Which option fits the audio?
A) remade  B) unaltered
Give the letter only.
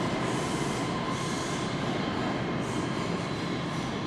B